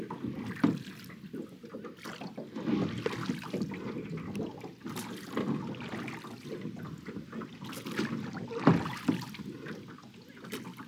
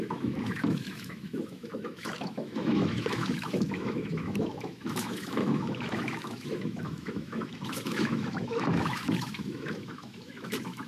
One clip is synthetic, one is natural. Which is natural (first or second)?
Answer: first